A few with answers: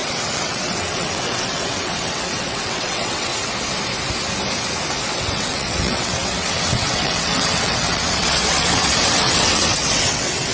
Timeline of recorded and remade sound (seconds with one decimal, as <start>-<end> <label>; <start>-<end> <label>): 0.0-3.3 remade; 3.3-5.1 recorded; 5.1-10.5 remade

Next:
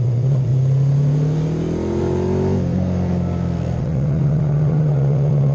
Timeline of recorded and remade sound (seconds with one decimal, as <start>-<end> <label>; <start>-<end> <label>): 0.0-0.5 remade; 0.5-3.8 recorded; 3.8-5.5 remade

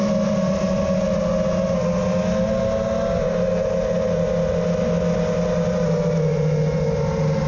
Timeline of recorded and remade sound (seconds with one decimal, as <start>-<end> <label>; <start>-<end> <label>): 0.0-7.5 recorded